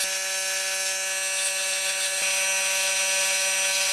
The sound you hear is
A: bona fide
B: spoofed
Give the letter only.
A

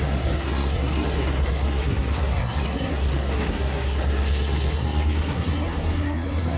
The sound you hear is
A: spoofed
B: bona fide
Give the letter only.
A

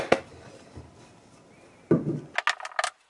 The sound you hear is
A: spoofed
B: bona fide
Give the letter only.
B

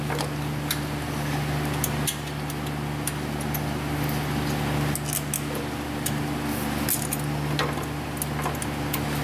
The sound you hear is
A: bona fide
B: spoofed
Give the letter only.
A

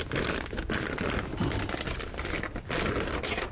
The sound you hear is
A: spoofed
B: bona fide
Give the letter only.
B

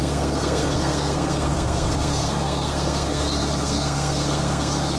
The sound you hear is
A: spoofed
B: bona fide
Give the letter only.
A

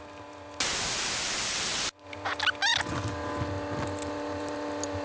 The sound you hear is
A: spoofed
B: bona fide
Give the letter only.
B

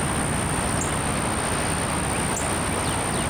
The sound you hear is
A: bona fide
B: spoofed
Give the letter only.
A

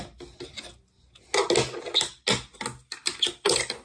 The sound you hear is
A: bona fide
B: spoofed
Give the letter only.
A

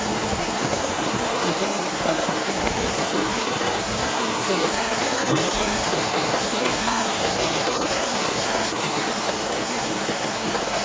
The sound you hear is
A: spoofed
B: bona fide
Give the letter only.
A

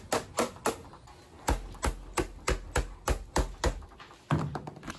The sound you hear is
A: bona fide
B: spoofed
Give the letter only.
A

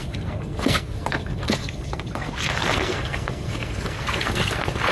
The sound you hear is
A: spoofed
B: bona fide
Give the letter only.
A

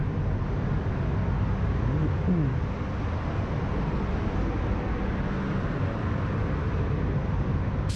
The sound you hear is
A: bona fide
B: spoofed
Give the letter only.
A